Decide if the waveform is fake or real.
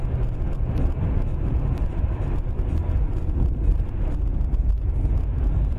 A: real